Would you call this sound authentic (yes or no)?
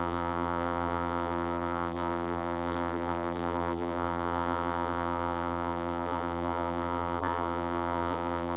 no